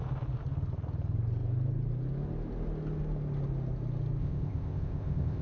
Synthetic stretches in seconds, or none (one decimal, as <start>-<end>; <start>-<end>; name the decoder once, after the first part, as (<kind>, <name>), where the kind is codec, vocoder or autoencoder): 4.2-5.4 (codec, ZipCodec)